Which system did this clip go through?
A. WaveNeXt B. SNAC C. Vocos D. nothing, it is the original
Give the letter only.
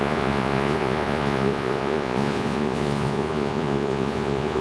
C